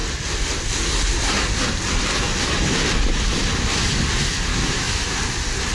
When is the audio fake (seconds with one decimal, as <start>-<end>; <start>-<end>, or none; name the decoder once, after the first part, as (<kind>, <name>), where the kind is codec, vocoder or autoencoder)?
4.5-5.2 (autoencoder, DAC-VAE)